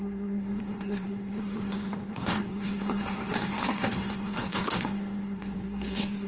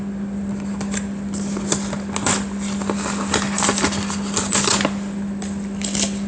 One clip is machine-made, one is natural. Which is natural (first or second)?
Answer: second